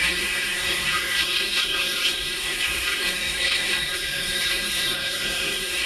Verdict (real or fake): fake